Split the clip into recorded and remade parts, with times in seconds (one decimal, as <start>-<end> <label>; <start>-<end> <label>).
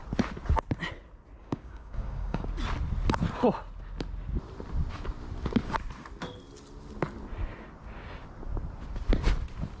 0.0-1.4 recorded; 1.4-2.5 remade; 2.5-9.8 recorded